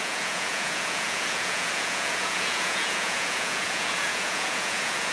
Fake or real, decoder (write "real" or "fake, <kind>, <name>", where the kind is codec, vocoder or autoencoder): fake, vocoder, Vocos